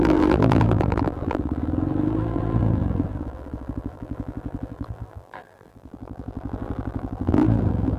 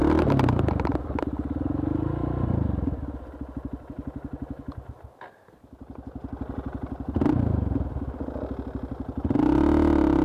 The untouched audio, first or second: second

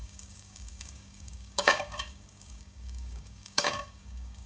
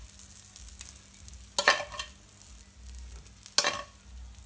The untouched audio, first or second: second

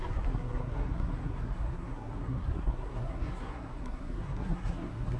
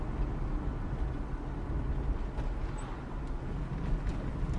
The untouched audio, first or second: second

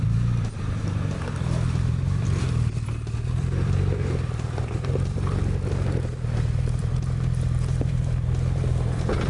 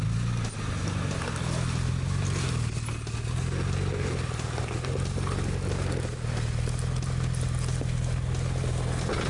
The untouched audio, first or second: second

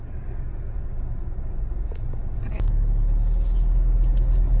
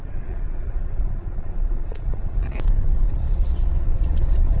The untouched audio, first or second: first